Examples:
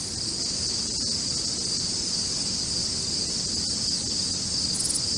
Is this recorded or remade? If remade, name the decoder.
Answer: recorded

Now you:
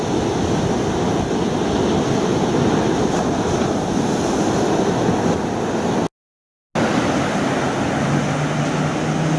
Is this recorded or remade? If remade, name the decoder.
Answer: recorded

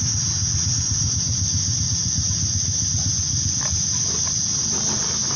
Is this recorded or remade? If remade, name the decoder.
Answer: recorded